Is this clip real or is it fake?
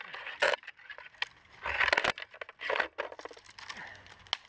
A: real